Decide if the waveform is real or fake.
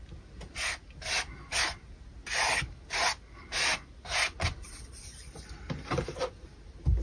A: real